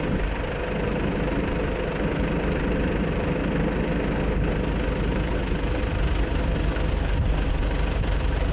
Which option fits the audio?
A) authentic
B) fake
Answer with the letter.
A